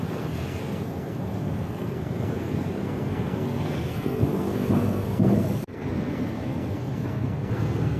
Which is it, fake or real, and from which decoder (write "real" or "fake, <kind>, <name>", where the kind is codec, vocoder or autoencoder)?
fake, codec, SNAC